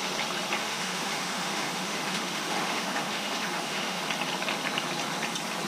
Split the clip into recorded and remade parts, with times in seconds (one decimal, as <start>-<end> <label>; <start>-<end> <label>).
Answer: 0.0-0.6 recorded; 0.6-4.0 remade; 4.0-5.7 recorded